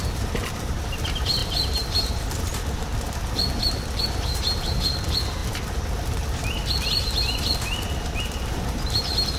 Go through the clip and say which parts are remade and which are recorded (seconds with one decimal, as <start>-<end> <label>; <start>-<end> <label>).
0.0-2.9 remade; 2.9-4.0 recorded; 4.0-5.4 remade; 5.4-8.2 recorded; 8.2-9.4 remade